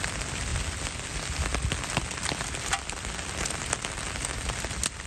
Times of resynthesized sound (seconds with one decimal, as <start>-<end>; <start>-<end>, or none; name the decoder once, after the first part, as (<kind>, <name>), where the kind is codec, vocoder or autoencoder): none